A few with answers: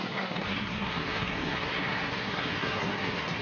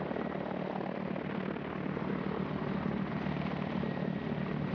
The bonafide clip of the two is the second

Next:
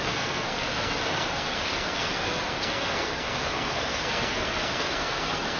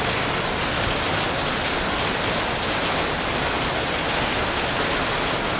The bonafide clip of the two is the second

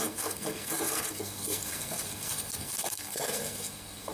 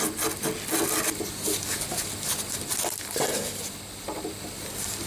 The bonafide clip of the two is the second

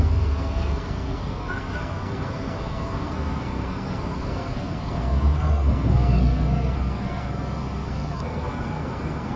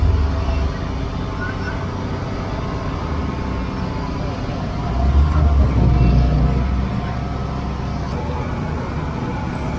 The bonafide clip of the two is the second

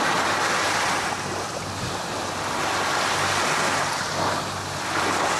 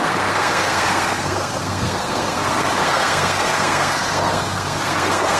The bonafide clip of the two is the first